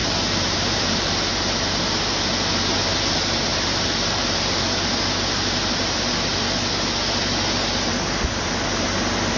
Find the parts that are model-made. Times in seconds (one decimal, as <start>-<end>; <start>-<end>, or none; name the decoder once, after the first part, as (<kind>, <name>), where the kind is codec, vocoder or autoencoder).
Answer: 0.0-1.3 (vocoder, BigVGAN v2)